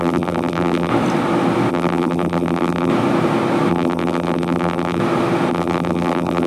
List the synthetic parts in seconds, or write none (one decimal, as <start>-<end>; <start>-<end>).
0.0-0.9; 1.7-2.9; 3.7-5.0; 5.5-6.5